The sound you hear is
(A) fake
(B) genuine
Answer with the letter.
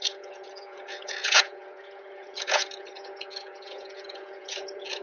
A